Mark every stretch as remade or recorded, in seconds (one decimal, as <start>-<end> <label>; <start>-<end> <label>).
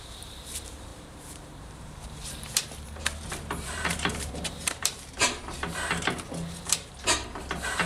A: 0.0-5.4 remade; 5.4-6.6 recorded; 6.6-7.9 remade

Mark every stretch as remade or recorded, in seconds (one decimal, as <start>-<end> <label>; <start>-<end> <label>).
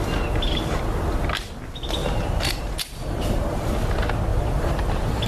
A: 0.0-2.0 recorded; 2.0-2.5 remade; 2.5-3.0 recorded; 3.0-3.6 remade; 3.6-4.3 recorded; 4.3-5.3 remade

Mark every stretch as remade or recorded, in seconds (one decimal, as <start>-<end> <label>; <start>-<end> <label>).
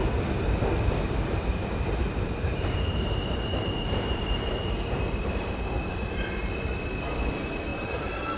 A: 0.0-2.0 recorded; 2.0-4.5 remade; 4.5-7.7 recorded; 7.7-8.4 remade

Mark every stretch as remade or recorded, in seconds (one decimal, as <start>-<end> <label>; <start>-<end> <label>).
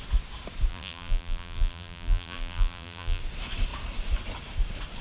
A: 0.0-0.7 recorded; 0.7-3.2 remade; 3.2-5.0 recorded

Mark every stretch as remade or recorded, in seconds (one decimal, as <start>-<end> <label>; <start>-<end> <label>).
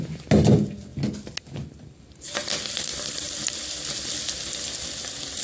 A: 0.0-5.4 recorded